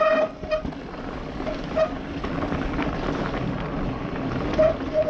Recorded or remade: recorded